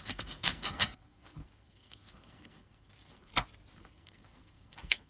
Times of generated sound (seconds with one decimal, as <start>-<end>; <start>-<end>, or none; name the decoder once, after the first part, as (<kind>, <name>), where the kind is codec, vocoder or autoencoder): 0.0-3.3 (codec, SNAC); 3.8-5.1